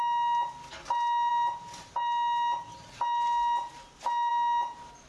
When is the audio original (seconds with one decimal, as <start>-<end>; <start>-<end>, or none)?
0.0-5.1